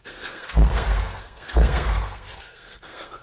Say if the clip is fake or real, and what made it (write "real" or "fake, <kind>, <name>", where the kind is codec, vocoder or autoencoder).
fake, codec, SNAC